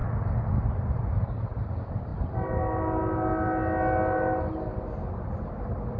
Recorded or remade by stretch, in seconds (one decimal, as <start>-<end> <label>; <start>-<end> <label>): 0.0-6.0 recorded